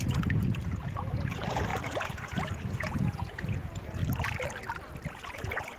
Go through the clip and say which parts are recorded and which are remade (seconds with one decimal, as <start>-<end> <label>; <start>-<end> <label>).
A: 0.0-4.0 remade; 4.0-5.1 recorded; 5.1-5.8 remade